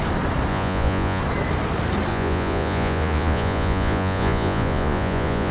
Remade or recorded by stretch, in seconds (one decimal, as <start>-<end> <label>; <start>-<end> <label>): 0.0-0.5 recorded; 0.5-1.2 remade; 1.2-2.1 recorded; 2.1-5.5 remade